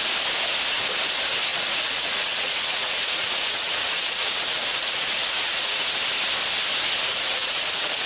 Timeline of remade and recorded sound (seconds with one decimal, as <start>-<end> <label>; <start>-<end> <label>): 0.0-1.5 recorded; 1.5-6.0 remade; 6.0-7.1 recorded; 7.1-8.1 remade